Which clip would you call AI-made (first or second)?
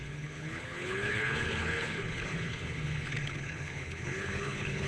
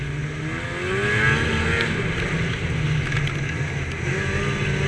first